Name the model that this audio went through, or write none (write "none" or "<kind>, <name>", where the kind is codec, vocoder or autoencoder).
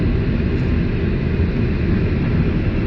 none